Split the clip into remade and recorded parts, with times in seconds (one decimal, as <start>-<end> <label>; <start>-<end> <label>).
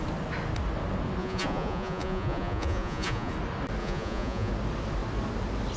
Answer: 0.0-1.2 recorded; 1.2-3.3 remade; 3.3-3.8 recorded; 3.8-4.5 remade; 4.5-5.8 recorded